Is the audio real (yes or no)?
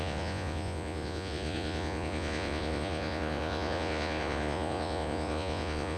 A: no